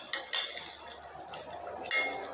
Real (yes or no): yes